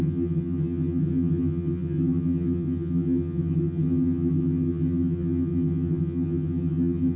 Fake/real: fake